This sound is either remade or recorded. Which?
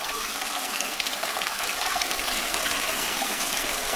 remade